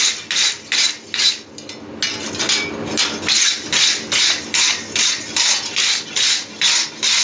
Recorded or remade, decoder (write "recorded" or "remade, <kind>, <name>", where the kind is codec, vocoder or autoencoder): recorded